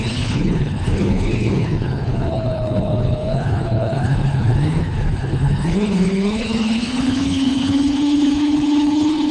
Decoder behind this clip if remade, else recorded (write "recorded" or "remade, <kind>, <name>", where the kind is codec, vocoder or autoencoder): remade, codec, HILCodec